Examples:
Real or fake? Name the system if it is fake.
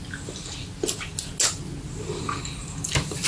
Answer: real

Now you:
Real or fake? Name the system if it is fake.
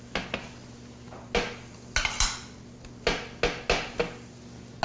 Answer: real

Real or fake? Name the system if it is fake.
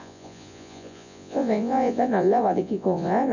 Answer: fake, vocoder, Vocos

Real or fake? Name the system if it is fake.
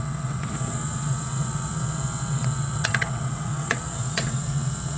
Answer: fake, vocoder, WaveNeXt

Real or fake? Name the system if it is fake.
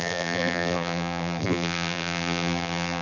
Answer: fake, vocoder, BigVGAN v2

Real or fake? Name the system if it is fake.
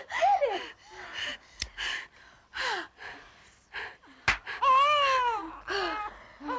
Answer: real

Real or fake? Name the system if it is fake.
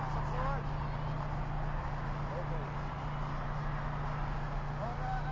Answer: real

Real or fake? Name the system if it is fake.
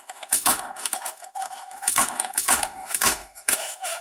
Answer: fake, autoencoder, DAC-VAE